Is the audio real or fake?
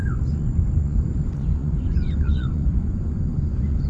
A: fake